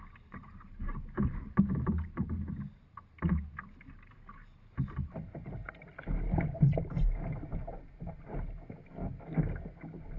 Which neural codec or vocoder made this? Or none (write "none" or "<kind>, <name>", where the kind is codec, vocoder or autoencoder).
none